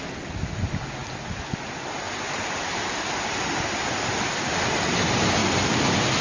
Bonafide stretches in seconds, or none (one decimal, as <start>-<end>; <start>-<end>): 0.0-6.2